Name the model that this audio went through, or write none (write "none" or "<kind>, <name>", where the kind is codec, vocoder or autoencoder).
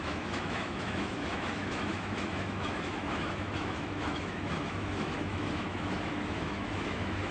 autoencoder, DAC-VAE